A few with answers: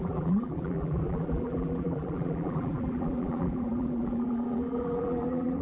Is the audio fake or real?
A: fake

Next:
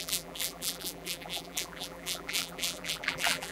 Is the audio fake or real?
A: fake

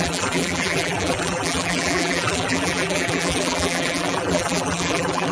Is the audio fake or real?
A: fake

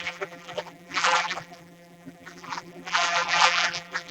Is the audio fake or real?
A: fake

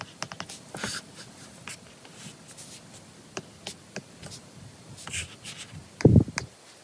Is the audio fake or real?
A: real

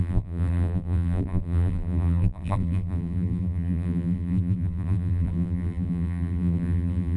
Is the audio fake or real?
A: fake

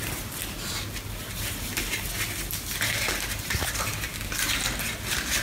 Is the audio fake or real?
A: real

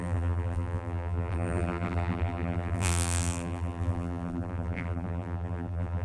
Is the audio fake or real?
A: fake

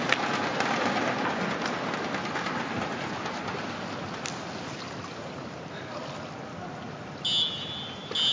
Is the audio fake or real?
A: real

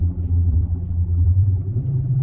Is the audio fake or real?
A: fake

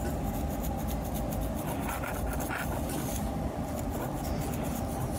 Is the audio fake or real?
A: real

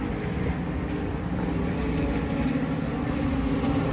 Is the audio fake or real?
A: real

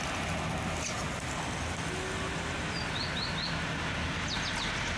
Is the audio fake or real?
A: real